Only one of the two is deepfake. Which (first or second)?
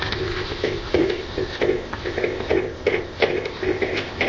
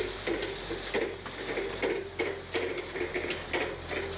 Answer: first